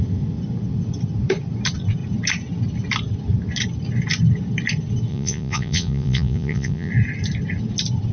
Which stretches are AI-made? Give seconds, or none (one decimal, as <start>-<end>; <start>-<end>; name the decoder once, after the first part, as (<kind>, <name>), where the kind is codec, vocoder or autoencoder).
5.1-6.9 (vocoder, Vocos)